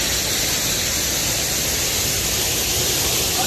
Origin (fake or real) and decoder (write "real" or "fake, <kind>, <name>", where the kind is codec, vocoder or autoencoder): real